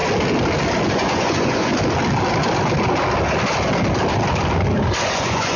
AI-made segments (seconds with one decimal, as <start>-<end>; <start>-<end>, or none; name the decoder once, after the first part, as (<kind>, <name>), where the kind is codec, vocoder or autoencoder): 0.9-1.7 (vocoder, Vocos); 5.1-5.6